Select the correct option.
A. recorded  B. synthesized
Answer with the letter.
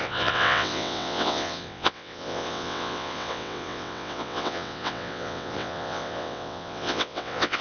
B